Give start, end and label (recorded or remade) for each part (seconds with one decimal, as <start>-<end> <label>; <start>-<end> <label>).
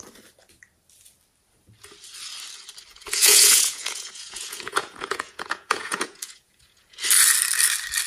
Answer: 0.0-2.9 recorded; 2.9-7.0 remade; 7.0-8.1 recorded